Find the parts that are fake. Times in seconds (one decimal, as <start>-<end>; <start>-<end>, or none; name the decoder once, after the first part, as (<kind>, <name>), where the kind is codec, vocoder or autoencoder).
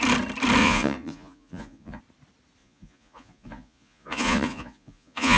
0.6-2.0 (vocoder, Vocos); 2.6-5.4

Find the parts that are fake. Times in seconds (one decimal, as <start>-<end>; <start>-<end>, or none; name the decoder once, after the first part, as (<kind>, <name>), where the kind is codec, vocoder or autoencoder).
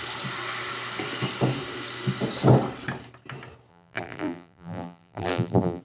3.7-5.8 (vocoder, BigVGAN v2)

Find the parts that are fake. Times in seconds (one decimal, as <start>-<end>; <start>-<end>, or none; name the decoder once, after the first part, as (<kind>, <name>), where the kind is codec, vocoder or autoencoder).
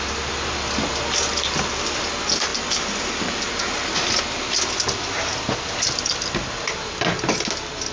none